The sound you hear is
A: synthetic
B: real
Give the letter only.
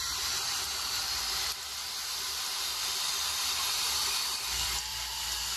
A